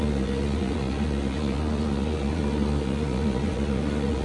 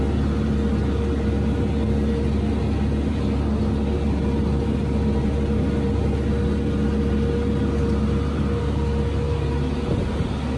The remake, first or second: first